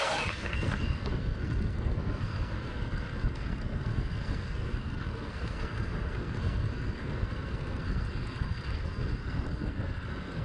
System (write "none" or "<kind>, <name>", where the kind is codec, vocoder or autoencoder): codec, SNAC